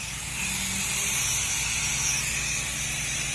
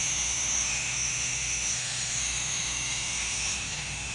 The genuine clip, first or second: first